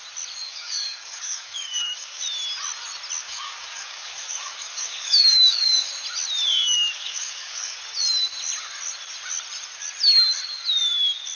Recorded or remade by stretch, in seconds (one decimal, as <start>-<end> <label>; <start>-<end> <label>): 0.0-0.5 recorded; 0.5-2.2 remade; 2.2-3.2 recorded; 3.2-5.9 remade; 5.9-6.5 recorded; 6.5-7.8 remade; 7.8-11.3 recorded